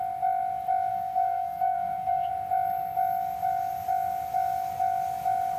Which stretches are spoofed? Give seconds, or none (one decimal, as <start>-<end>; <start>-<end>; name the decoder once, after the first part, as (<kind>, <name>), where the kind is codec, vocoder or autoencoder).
0.9-2.3 (codec, SNAC)